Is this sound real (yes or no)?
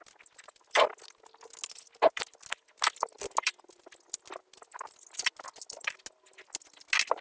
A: yes